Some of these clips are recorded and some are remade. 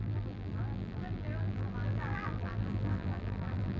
remade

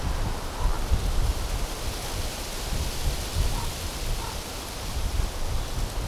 recorded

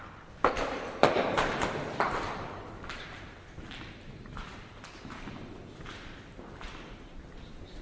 remade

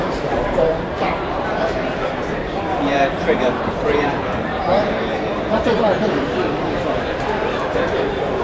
remade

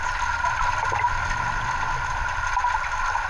remade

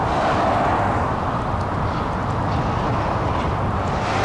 recorded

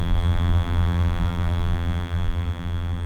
remade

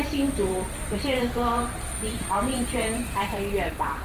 remade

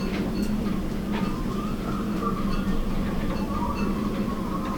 recorded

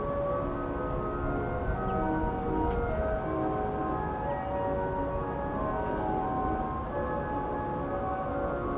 recorded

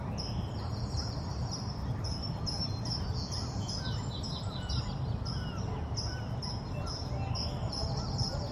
recorded